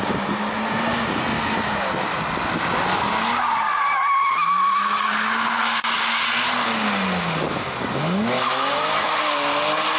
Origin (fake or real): real